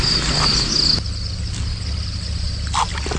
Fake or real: real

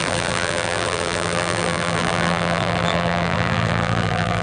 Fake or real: fake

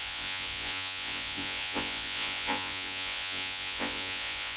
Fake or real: fake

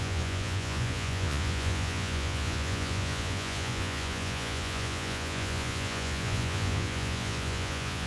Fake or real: fake